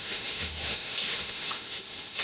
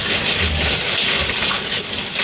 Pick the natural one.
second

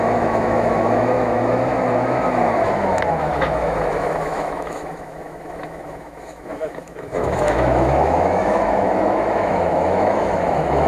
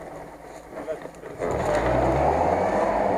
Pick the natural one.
second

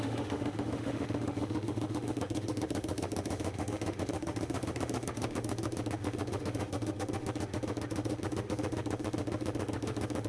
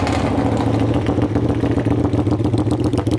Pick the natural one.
second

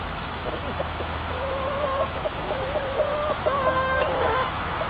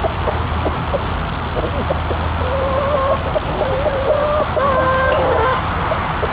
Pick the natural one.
second